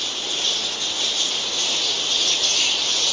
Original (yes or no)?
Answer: yes